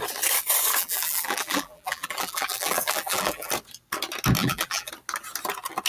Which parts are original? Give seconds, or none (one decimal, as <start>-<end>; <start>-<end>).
0.0-0.8; 3.5-4.4; 4.9-5.9